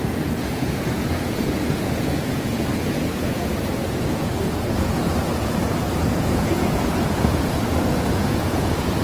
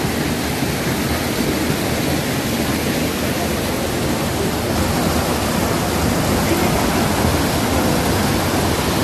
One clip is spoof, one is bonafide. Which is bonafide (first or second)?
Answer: second